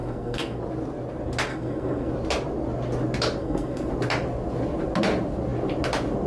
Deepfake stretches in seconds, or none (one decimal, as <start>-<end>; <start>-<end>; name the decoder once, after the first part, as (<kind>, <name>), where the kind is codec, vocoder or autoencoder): 0.0-0.6 (codec, SNAC); 1.5-2.1; 3.4-3.9